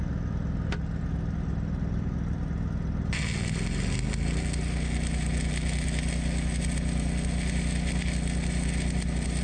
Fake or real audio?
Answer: real